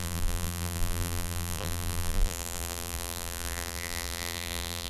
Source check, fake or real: fake